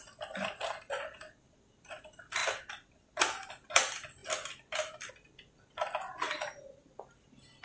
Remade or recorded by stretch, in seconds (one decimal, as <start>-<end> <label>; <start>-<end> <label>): 0.0-7.6 recorded